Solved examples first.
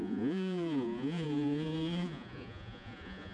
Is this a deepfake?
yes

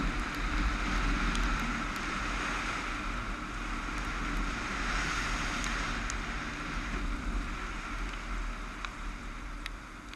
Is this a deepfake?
no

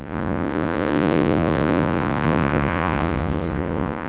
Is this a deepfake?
yes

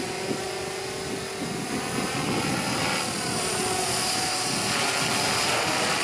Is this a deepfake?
no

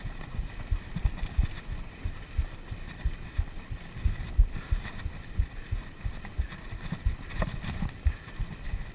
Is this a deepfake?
no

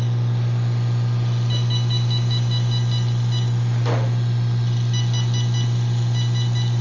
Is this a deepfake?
no